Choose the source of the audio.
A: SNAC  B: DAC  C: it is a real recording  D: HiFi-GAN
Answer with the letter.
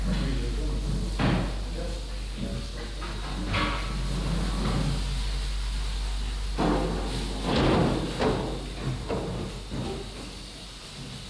C